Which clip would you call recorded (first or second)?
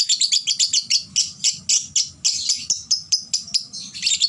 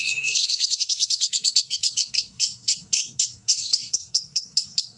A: first